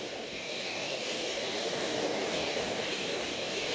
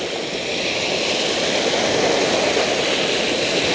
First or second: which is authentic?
second